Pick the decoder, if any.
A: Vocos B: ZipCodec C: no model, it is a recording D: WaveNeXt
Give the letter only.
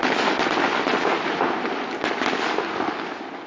C